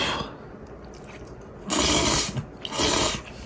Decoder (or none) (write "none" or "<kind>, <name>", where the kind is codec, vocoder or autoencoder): none